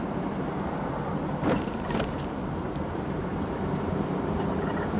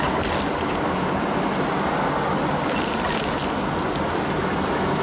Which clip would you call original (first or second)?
second